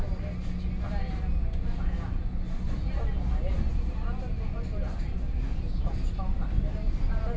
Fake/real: real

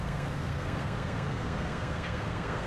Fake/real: fake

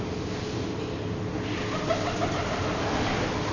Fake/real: real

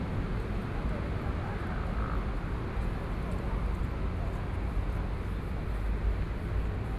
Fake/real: real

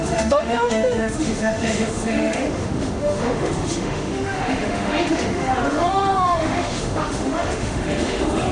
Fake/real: fake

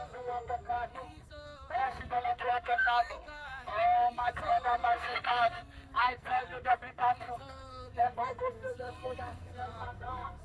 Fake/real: fake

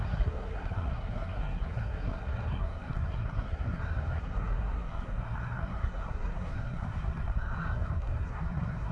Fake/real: fake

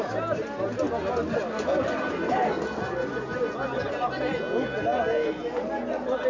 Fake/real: real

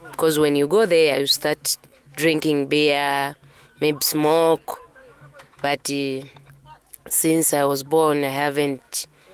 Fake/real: fake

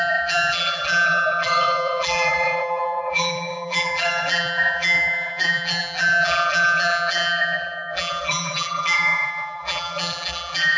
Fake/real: fake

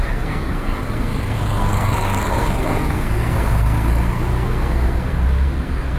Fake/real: fake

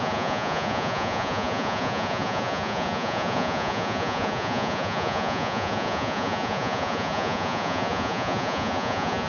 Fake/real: fake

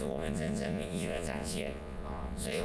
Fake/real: fake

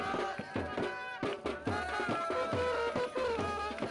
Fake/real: real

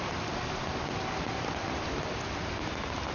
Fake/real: real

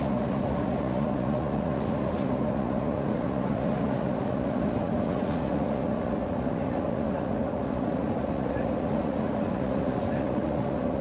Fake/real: fake